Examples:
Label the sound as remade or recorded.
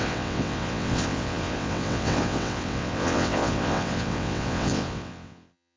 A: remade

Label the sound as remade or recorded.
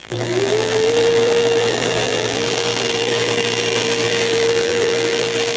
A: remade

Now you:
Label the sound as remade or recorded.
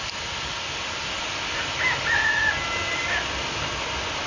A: recorded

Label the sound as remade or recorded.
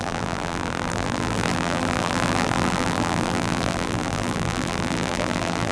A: remade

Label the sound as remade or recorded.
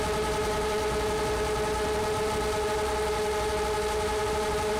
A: recorded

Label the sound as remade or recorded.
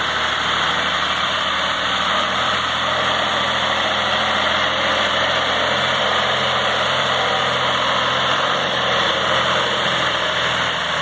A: remade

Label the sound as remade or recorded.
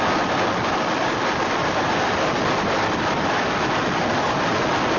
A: recorded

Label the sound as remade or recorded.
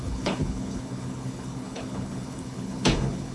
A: remade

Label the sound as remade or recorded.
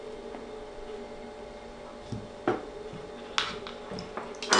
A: recorded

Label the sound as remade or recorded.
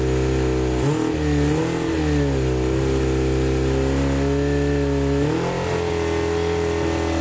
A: recorded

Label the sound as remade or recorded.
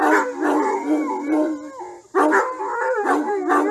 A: recorded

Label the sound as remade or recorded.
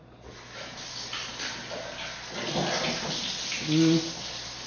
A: recorded